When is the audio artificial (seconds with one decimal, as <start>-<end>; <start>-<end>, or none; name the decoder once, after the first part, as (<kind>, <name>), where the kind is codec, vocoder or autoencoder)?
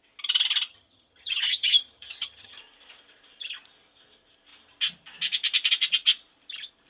0.7-2.6 (vocoder, HiFi-GAN)